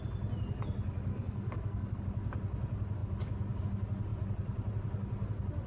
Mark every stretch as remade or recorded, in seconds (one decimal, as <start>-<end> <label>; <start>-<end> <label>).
0.0-1.1 recorded; 1.1-2.0 remade; 2.0-5.7 recorded